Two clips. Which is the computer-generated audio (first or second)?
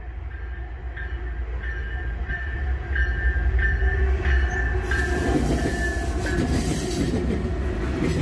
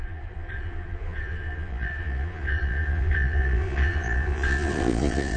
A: second